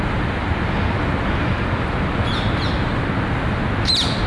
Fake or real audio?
real